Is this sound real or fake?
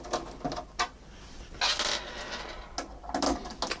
real